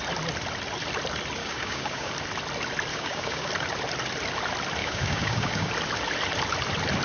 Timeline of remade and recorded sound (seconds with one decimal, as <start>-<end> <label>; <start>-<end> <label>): 0.0-1.4 recorded; 1.4-2.1 remade; 2.1-2.9 recorded; 2.9-3.5 remade; 3.5-4.8 recorded; 4.8-5.7 remade; 5.7-7.0 recorded